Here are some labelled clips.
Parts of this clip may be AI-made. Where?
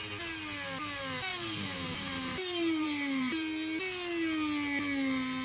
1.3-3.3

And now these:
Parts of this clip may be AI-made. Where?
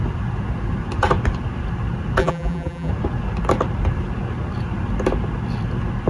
2.2-2.9